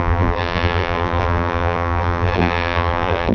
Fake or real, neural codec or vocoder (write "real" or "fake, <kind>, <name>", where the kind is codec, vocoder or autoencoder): fake, vocoder, BigVGAN v2